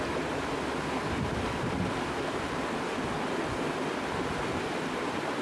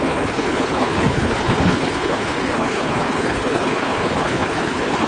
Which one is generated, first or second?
second